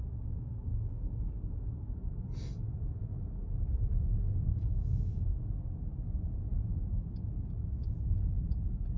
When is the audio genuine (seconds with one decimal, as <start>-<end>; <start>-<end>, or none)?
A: 0.0-0.5; 1.7-4.5; 5.5-9.0